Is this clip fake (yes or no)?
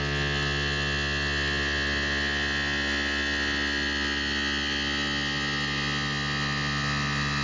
no